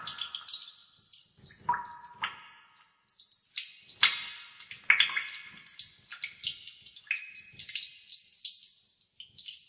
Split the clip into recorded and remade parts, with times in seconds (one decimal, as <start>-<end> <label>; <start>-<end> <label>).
0.0-9.7 recorded